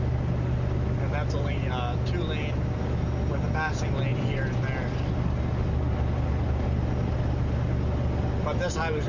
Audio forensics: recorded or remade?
recorded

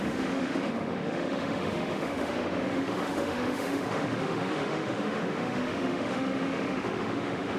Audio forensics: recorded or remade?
remade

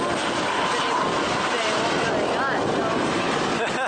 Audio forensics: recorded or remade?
recorded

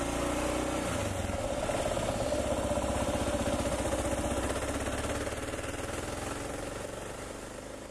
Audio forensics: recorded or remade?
recorded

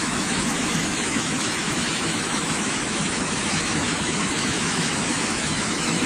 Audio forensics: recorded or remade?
remade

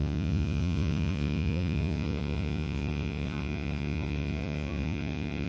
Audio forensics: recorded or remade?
remade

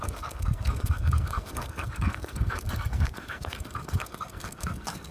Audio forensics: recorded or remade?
remade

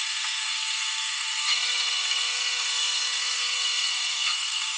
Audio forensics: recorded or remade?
remade